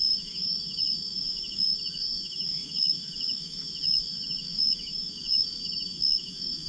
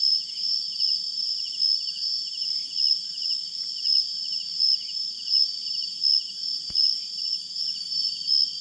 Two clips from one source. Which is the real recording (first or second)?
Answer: second